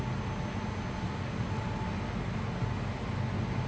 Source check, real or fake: real